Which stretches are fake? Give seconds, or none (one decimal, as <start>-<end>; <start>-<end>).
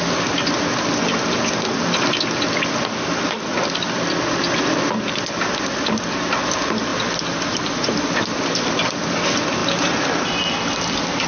none